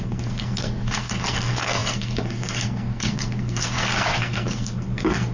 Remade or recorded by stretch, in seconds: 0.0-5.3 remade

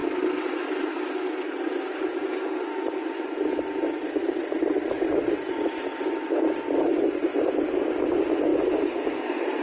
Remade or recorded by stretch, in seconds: 0.0-9.6 recorded